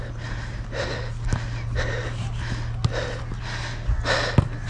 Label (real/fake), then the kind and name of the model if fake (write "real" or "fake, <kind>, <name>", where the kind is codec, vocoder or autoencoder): real